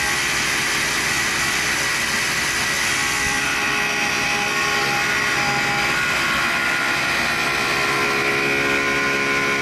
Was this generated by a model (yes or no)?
no